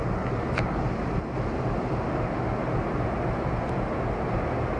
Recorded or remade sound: recorded